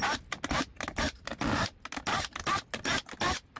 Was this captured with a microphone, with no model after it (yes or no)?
yes